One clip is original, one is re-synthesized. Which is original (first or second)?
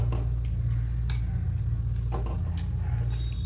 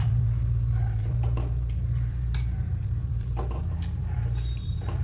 first